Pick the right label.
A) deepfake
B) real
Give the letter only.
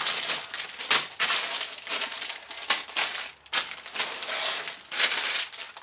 B